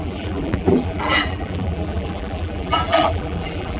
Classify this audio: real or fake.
fake